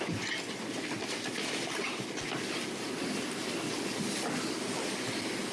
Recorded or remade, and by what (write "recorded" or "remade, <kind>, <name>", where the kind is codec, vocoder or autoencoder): recorded